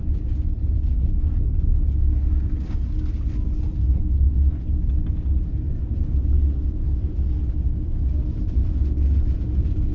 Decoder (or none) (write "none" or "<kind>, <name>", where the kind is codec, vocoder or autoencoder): none